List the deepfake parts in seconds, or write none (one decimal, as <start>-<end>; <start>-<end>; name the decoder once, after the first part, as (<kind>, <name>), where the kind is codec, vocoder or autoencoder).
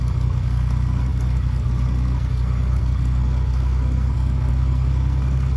0.0-5.6 (codec, SNAC)